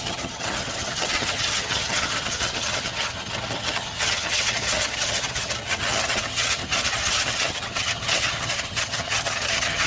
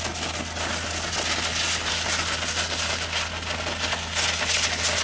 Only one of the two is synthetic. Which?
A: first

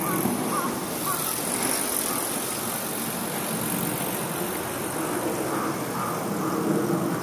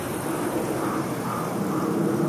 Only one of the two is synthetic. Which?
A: second